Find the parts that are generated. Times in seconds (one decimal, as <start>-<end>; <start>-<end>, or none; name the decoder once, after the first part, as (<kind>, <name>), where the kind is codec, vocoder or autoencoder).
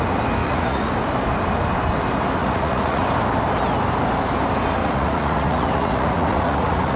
0.4-0.9 (vocoder, Vocos); 2.4-3.0; 4.8-7.0